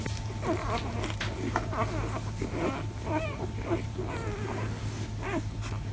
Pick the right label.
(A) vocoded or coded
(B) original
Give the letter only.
B